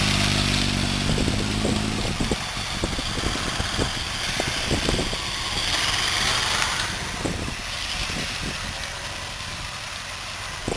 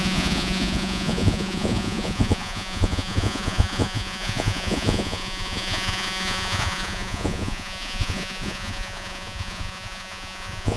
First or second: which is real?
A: first